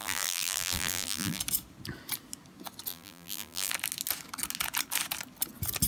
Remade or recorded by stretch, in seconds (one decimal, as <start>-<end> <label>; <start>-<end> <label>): 0.0-1.4 remade; 1.4-2.9 recorded; 2.9-3.7 remade; 3.7-5.9 recorded